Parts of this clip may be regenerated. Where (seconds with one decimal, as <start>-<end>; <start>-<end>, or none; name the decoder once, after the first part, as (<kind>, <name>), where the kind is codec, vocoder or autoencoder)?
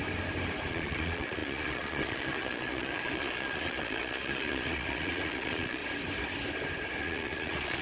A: 0.7-5.8 (vocoder, Vocos); 7.0-7.8